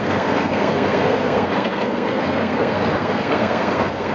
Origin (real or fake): fake